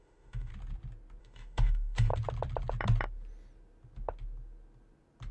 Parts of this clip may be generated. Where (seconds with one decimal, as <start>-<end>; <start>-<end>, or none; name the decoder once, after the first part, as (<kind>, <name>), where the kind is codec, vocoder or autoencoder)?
0.0-0.5 (autoencoder, DAC-VAE); 1.2-2.1